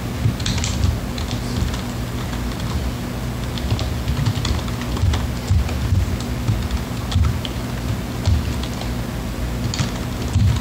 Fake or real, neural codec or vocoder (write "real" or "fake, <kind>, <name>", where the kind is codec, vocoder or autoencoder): real